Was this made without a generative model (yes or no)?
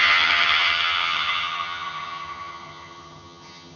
no